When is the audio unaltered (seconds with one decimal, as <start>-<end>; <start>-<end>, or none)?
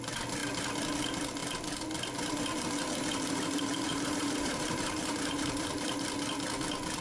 0.0-3.9; 6.0-7.0